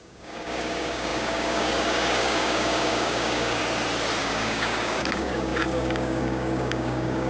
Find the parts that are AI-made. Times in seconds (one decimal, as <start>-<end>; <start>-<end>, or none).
0.0-3.6; 4.2-7.3